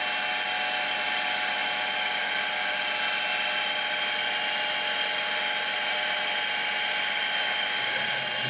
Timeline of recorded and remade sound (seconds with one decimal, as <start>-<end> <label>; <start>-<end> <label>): 0.0-1.6 recorded; 1.6-2.2 remade; 2.2-8.5 recorded